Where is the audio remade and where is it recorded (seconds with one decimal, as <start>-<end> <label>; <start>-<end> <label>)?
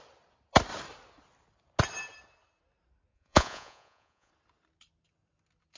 0.0-3.1 recorded; 3.1-4.3 remade; 4.3-5.8 recorded